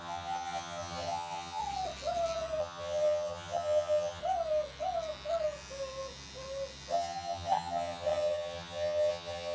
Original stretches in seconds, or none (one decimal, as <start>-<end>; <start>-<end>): 1.6-2.6; 4.2-6.9